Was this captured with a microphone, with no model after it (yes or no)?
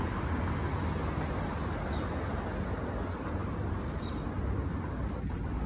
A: yes